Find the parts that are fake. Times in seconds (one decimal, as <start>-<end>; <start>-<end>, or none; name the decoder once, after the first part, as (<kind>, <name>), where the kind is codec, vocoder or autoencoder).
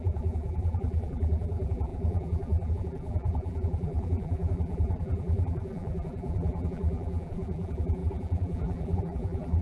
0.0-9.6 (vocoder, BigVGAN v2)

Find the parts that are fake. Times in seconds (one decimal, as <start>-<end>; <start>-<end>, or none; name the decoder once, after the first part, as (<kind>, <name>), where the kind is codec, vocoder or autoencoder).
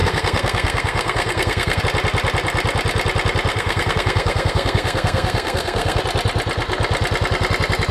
0.0-1.8 (codec, SNAC); 3.5-6.0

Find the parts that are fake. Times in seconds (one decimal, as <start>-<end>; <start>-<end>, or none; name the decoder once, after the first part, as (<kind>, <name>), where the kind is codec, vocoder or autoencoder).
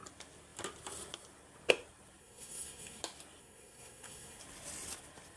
2.2-3.0 (codec, SNAC); 3.4-4.4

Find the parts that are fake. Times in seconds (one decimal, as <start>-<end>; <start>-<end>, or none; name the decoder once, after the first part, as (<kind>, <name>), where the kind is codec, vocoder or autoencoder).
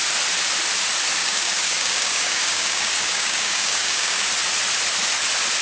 1.2-4.3 (codec, DAC)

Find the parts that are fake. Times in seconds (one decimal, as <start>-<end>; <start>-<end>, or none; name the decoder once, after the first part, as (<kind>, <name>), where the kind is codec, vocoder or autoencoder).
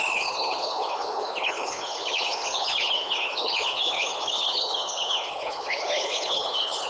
0.0-6.9 (codec, HILCodec)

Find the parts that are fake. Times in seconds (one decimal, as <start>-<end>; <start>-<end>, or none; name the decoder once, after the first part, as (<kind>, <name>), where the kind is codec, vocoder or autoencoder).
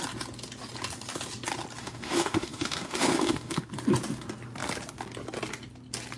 1.8-3.7 (autoencoder, DAC-VAE)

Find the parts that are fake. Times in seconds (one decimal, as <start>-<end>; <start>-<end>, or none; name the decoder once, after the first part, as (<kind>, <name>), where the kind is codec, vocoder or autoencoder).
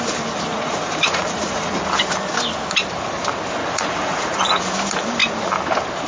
0.5-1.8 (vocoder, Vocos); 3.6-4.6